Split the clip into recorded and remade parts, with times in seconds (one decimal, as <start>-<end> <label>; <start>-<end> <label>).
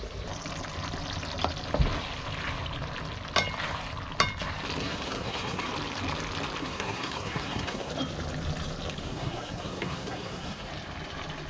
0.0-4.8 recorded; 4.8-5.7 remade; 5.7-6.6 recorded; 6.6-7.9 remade; 7.9-9.0 recorded; 9.0-10.7 remade; 10.7-11.5 recorded